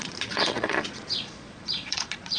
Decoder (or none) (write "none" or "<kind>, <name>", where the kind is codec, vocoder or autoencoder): vocoder, Vocos